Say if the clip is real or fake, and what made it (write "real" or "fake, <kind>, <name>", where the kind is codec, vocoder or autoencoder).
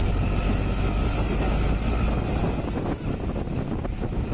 real